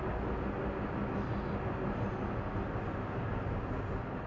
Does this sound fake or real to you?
real